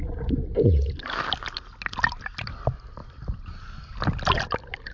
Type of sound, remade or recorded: recorded